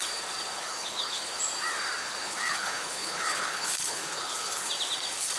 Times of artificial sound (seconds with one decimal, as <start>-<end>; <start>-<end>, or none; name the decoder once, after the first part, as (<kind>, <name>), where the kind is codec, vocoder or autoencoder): 0.5-1.4 (codec, HILCodec); 2.0-4.7